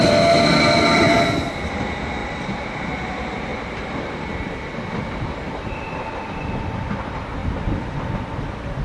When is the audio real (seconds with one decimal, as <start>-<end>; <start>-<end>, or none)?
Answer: 0.0-2.2; 2.8-3.5; 4.0-8.8